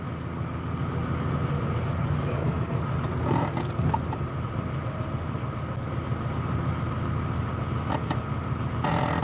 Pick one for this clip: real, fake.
real